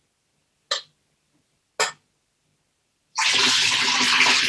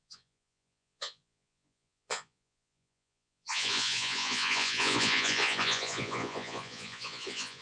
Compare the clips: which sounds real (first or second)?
first